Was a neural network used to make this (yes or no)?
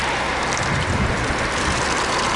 no